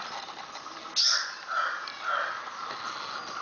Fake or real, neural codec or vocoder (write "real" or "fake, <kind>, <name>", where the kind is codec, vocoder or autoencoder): real